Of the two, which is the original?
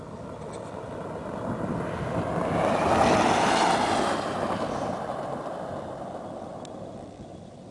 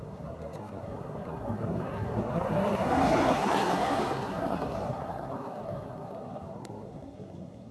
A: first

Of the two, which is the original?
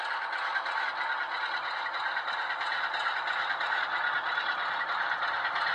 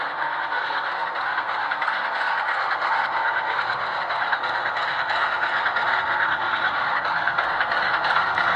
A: first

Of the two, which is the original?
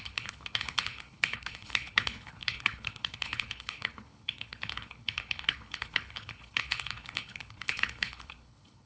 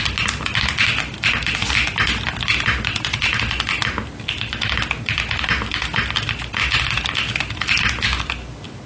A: second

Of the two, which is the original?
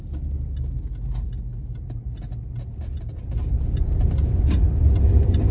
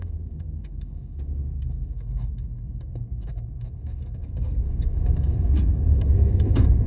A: first